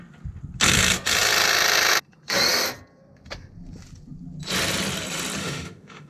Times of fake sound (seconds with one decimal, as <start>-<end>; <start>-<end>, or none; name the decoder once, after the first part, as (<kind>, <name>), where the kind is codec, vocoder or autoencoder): 5.4-6.1 (autoencoder, DAC-VAE)